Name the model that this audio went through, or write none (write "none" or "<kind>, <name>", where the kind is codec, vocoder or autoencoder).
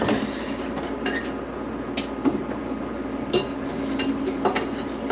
none